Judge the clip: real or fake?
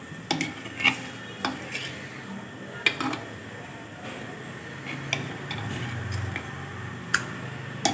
real